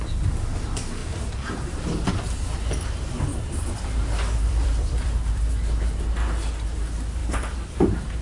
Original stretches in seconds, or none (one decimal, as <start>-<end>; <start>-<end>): 0.0-3.3; 5.5-7.2